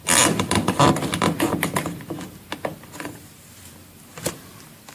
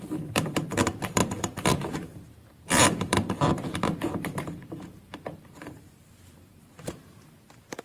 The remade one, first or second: second